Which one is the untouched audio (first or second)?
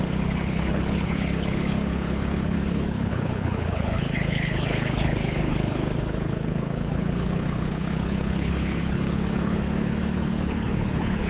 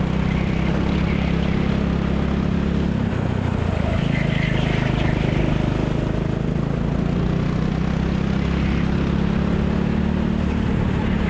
second